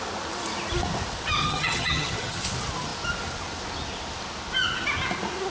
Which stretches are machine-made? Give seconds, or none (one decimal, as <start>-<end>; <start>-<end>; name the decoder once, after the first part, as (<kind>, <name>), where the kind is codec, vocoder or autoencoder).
1.4-2.4 (vocoder, HiFi-GAN)